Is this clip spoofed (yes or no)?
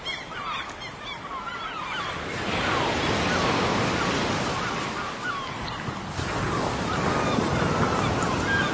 no